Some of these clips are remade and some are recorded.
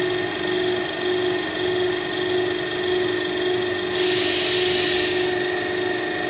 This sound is recorded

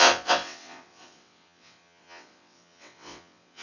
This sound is remade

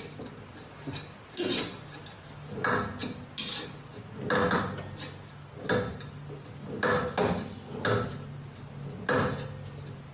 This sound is recorded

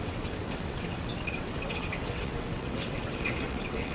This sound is remade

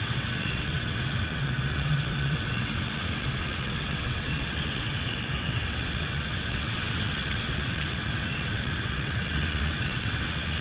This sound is remade